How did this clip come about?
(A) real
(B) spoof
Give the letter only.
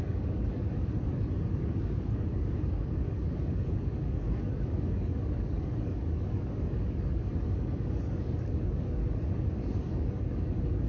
B